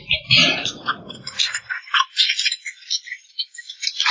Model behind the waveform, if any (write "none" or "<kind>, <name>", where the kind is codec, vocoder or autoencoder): none